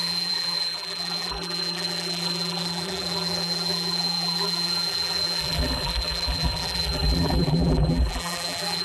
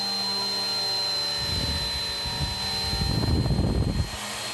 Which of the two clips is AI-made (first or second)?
first